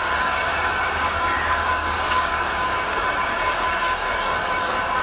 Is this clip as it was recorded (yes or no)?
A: no